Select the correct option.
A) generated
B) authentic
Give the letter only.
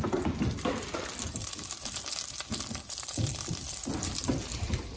B